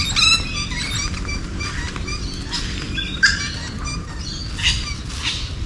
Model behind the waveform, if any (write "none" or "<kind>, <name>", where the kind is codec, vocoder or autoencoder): none